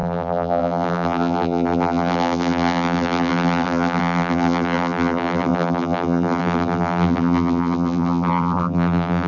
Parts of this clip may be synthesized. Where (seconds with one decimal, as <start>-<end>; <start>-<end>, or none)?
0.0-9.3